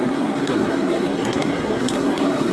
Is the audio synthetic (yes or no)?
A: yes